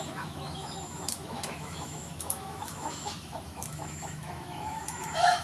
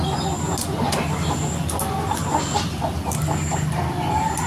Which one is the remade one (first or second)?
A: first